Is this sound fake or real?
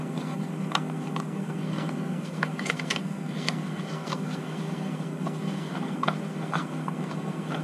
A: fake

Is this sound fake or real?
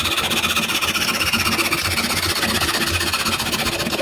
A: real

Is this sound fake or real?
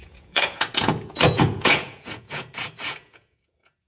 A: fake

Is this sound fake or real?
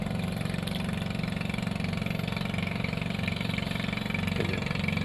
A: real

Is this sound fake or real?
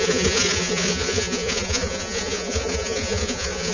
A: fake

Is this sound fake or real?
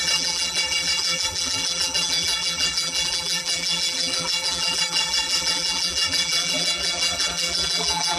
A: fake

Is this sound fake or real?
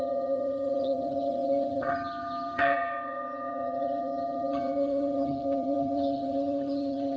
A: fake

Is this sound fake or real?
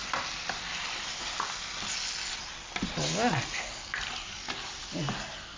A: real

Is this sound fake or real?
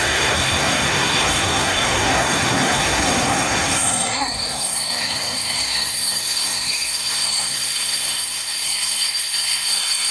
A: fake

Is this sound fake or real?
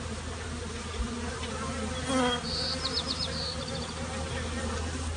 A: real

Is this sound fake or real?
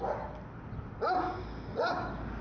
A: real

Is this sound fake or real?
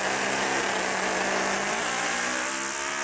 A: real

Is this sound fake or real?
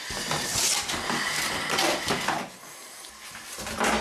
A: real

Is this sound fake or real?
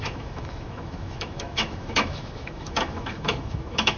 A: fake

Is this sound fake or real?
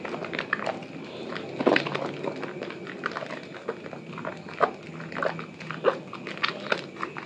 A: real